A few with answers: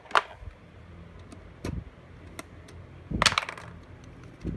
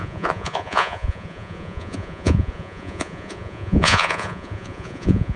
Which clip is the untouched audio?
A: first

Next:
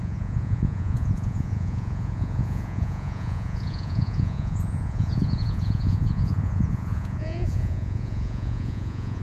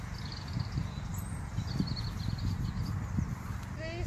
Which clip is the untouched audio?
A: second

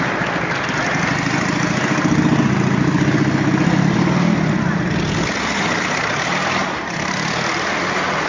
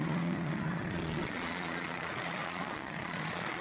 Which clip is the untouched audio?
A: first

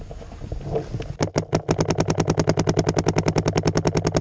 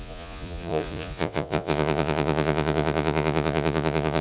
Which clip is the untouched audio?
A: first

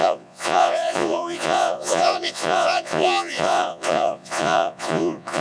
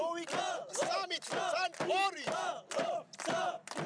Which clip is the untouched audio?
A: second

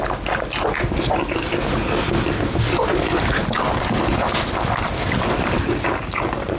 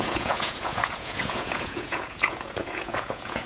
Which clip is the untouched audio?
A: first